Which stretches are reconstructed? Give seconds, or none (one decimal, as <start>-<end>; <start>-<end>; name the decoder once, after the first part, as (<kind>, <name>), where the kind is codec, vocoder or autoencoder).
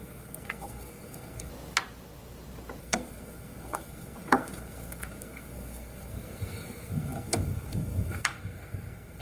0.0-1.5 (codec, SNAC); 2.8-9.2